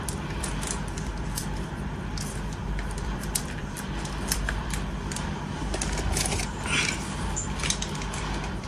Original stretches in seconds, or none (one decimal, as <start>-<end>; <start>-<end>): 0.0-1.4; 5.3-8.7